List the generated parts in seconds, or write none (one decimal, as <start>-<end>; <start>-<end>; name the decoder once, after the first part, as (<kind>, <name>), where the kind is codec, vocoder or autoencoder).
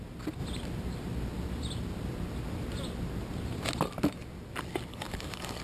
4.9-5.6 (codec, DAC)